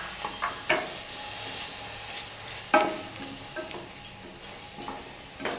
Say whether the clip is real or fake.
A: real